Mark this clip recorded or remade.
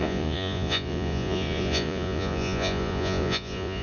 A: remade